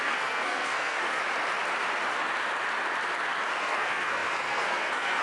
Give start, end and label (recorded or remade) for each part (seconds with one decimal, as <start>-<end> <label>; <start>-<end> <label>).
0.0-1.2 remade; 1.2-3.6 recorded; 3.6-5.2 remade